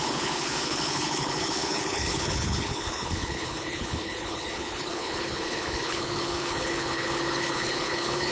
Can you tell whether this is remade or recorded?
remade